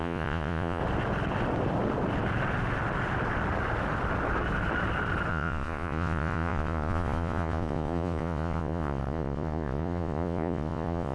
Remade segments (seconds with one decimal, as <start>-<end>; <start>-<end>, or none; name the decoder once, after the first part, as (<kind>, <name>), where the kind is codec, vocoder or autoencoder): 0.0-0.8 (vocoder, Vocos); 5.3-11.1